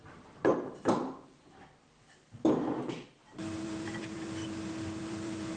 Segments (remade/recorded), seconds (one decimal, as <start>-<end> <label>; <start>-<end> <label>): 0.0-0.5 remade; 0.5-3.2 recorded; 3.2-4.4 remade; 4.4-5.0 recorded; 5.0-5.6 remade